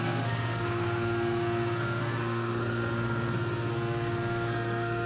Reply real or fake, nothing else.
fake